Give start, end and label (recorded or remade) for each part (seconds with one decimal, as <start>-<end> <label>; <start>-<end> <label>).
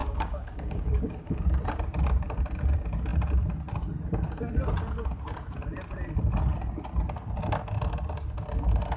0.0-1.6 remade; 1.6-9.0 recorded